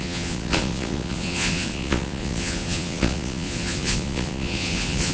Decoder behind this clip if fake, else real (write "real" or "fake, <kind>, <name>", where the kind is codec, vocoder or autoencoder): fake, vocoder, Vocos